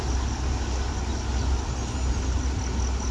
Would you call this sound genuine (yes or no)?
yes